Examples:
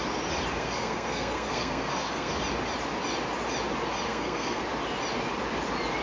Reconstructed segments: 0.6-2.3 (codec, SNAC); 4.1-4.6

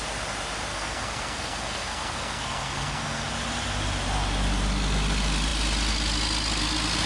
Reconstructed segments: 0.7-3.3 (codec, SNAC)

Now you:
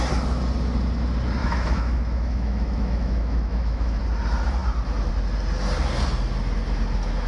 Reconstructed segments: 1.4-4.0 (autoencoder, DAC-VAE)

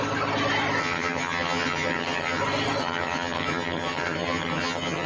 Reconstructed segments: 0.8-2.4 (vocoder, HiFi-GAN); 2.8-5.1

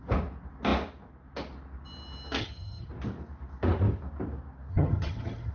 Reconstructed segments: 2.4-2.9 (vocoder, HiFi-GAN); 4.7-5.5

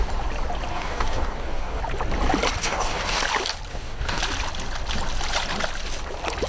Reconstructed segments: 0.7-1.8 (codec, DAC); 2.6-3.2; 3.7-4.2

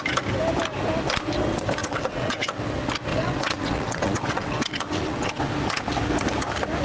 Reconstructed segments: 1.8-2.6 (vocoder, WaveNeXt); 3.1-5.5